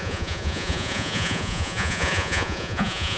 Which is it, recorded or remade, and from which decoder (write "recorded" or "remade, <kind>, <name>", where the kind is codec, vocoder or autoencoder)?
remade, vocoder, Vocos